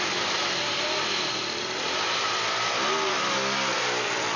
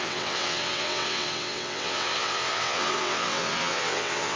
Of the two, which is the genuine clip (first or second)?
first